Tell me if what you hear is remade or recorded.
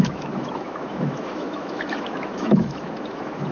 remade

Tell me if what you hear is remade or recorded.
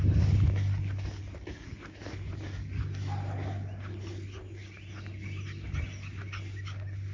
recorded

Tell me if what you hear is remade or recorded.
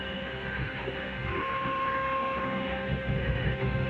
remade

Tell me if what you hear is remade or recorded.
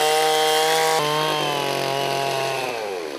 recorded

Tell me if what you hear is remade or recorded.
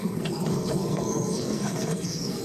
remade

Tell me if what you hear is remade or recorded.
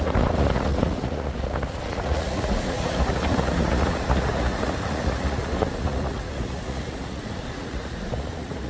remade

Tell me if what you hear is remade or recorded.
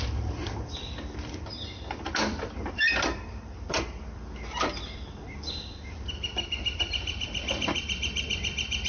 remade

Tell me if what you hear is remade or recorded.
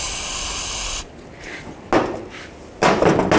recorded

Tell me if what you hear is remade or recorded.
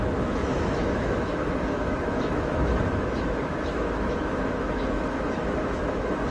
remade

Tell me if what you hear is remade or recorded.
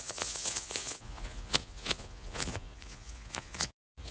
remade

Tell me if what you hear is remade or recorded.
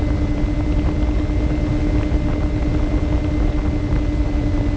recorded